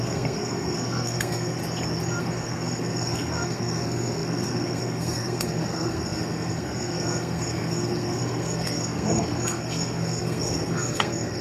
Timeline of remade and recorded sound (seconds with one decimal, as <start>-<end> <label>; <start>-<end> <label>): 0.0-1.6 remade; 1.6-2.2 recorded; 2.2-11.4 remade